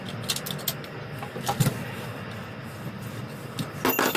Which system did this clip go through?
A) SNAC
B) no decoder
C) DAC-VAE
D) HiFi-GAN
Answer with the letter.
B